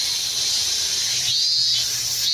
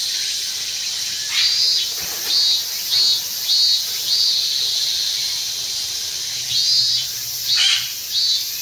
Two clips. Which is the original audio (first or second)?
first